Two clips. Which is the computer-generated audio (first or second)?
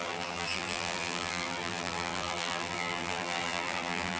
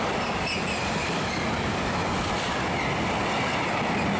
first